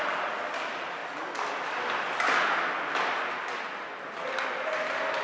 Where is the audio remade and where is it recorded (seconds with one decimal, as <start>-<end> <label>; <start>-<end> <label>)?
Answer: 0.0-5.2 recorded